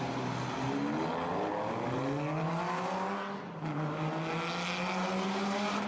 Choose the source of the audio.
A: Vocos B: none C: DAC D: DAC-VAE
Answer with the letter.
B